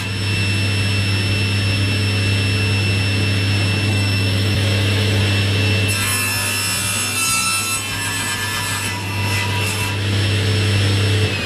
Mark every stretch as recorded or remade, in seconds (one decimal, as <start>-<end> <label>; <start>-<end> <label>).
0.0-3.9 recorded; 3.9-5.2 remade; 5.2-11.5 recorded